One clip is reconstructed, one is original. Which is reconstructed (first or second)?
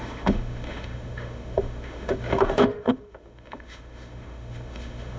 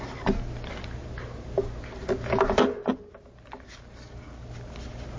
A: first